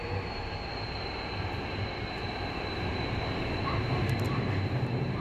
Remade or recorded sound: remade